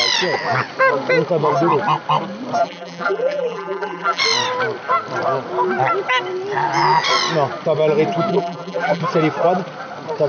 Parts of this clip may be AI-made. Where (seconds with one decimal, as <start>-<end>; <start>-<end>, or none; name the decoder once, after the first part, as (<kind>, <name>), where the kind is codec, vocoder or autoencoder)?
2.6-4.2 (vocoder, BigVGAN v2); 8.3-9.0